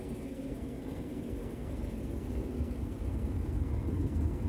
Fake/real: fake